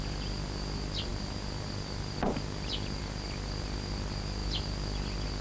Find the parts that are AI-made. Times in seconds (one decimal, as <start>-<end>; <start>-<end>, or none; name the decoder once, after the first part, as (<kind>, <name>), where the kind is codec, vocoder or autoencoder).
none